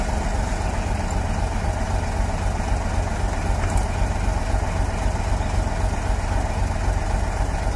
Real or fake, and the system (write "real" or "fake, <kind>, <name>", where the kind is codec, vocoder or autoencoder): real